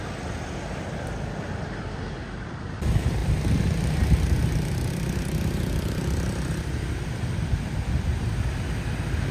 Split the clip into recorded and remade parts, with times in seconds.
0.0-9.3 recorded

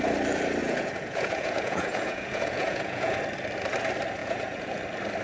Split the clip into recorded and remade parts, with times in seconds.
0.0-0.6 recorded; 0.6-3.2 remade; 3.2-4.2 recorded; 4.2-4.8 remade; 4.8-5.2 recorded

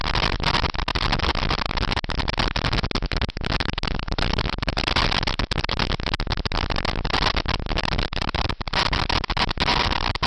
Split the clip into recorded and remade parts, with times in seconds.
0.0-10.3 recorded

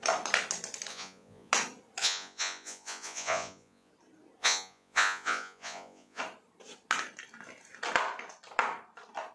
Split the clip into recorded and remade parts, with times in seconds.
0.0-0.9 recorded; 0.9-1.5 remade; 1.5-2.0 recorded; 2.0-3.9 remade; 3.9-4.4 recorded; 4.4-6.2 remade; 6.2-9.3 recorded

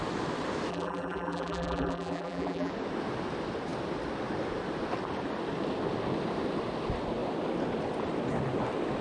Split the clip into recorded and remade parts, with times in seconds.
0.0-0.7 recorded; 0.7-2.7 remade; 2.7-9.0 recorded

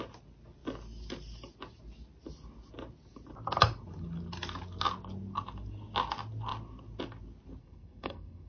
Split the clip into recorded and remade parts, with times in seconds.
0.0-7.6 recorded; 7.6-8.5 remade

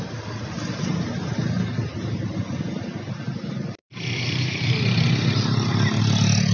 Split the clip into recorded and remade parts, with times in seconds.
0.0-6.5 recorded

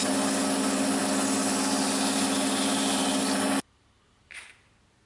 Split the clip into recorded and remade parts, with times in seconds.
0.0-5.1 recorded